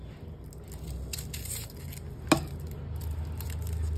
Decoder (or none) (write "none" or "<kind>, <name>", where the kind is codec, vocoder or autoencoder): none